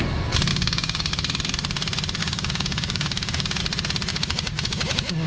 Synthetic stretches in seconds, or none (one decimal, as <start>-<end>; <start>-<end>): 0.5-1.1; 2.2-3.6; 4.1-5.3